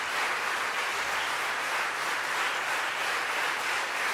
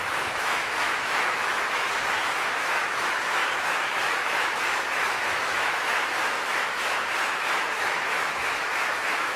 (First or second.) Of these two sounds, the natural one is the first